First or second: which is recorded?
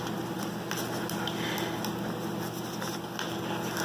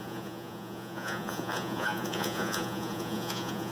first